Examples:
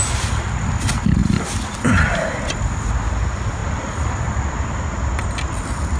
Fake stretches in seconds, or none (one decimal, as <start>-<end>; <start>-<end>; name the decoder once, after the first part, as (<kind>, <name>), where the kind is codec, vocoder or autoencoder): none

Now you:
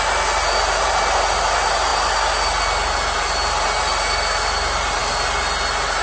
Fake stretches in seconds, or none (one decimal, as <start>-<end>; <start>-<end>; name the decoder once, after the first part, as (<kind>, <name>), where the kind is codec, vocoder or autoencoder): none

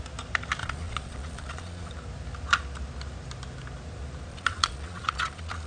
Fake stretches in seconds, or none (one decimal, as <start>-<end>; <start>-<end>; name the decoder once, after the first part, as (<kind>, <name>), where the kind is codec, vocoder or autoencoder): 0.6-1.9 (vocoder, Vocos); 4.3-5.7

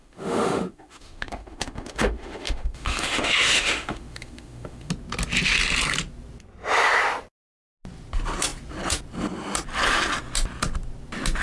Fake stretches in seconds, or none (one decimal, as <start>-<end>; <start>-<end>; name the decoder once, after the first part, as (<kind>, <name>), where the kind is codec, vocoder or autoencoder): 0.0-4.9 (autoencoder, DAC-VAE)

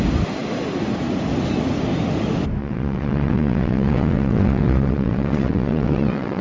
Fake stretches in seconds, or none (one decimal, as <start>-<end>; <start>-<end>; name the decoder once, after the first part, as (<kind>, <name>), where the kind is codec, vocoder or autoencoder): 2.6-6.4 (vocoder, WaveNeXt)

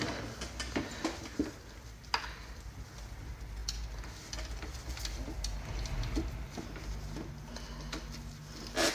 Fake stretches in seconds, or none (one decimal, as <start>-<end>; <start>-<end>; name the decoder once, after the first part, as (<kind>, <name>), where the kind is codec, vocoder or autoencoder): none